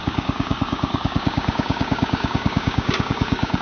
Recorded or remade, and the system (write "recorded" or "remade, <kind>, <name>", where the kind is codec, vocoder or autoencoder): remade, codec, DAC